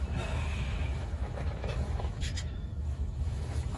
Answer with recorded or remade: remade